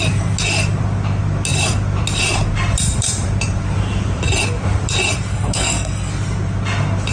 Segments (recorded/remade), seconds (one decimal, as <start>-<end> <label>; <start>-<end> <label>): 0.0-5.3 recorded; 5.3-6.1 remade; 6.1-7.1 recorded